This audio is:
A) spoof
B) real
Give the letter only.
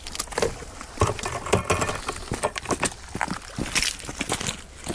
B